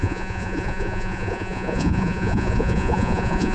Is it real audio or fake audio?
fake